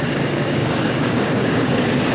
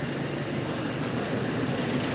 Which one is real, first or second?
second